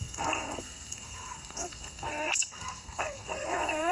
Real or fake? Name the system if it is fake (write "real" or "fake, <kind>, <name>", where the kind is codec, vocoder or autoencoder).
fake, codec, SNAC